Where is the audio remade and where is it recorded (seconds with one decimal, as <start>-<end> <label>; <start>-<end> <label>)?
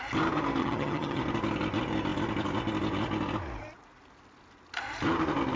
0.0-0.6 recorded; 0.6-1.2 remade; 1.2-5.6 recorded